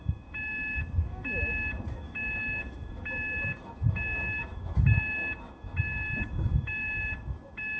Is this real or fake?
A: fake